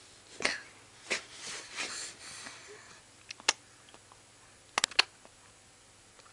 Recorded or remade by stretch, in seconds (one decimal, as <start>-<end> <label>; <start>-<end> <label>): 0.0-1.3 recorded; 1.3-2.0 remade; 2.0-6.3 recorded